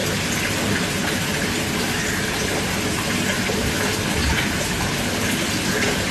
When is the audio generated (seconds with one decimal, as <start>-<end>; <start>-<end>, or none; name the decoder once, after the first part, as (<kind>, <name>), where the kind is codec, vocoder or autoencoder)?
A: 4.2-4.8 (vocoder, BigVGAN v2)